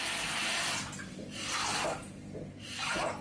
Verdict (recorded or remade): recorded